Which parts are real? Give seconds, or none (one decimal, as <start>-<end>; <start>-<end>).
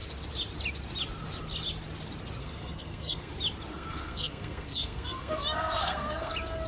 0.0-2.4; 3.3-3.7; 6.3-6.7